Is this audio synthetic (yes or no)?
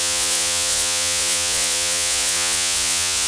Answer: yes